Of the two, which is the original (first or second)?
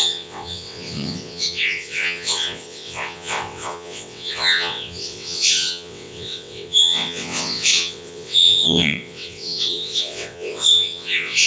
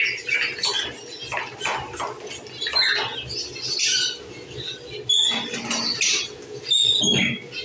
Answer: second